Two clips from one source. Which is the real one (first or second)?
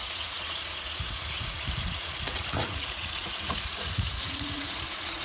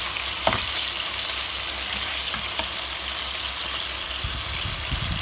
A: second